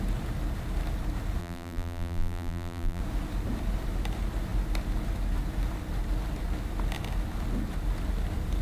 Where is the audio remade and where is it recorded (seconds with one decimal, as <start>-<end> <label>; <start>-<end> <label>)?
0.0-1.4 recorded; 1.4-3.0 remade; 3.0-8.6 recorded